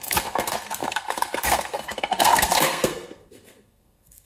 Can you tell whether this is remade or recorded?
remade